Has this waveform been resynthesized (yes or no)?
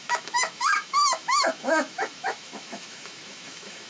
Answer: yes